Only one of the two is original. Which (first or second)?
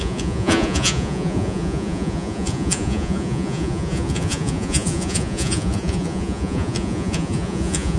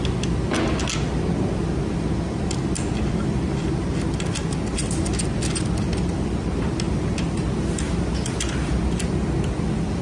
second